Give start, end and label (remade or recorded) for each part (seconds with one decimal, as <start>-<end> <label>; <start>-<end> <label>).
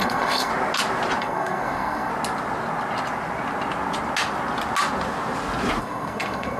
0.0-0.5 remade; 0.5-1.2 recorded; 1.2-2.1 remade; 2.1-5.8 recorded; 5.8-6.6 remade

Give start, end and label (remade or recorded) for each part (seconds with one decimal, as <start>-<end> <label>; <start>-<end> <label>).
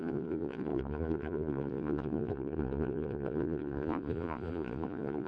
0.0-5.3 remade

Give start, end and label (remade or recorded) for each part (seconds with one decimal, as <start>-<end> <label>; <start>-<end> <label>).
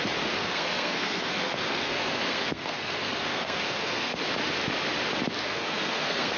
0.0-0.4 recorded; 0.4-4.2 remade; 4.2-5.4 recorded; 5.4-6.4 remade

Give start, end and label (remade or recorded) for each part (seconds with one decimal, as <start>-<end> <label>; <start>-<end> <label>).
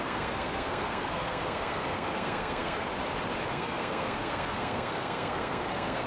0.0-2.9 remade; 2.9-3.5 recorded; 3.5-6.1 remade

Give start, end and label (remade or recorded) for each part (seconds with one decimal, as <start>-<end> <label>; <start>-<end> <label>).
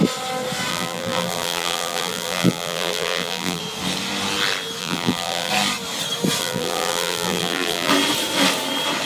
0.0-0.7 recorded; 0.7-3.6 remade; 3.6-4.8 recorded; 4.8-5.5 remade; 5.5-6.4 recorded; 6.4-7.9 remade; 7.9-9.1 recorded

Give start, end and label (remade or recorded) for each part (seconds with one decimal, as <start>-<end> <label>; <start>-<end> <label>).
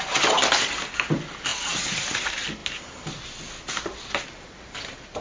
0.0-2.6 recorded; 2.6-3.7 remade; 3.7-5.2 recorded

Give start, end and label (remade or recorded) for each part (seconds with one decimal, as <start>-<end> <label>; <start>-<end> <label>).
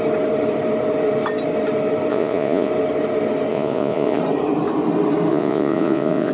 0.0-2.1 recorded; 2.1-2.7 remade; 2.7-3.5 recorded; 3.5-4.2 remade; 4.2-5.3 recorded; 5.3-6.3 remade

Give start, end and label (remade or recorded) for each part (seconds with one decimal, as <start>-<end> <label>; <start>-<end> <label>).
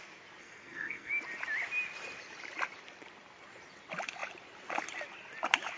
0.0-0.4 recorded; 0.4-1.1 remade; 1.1-5.8 recorded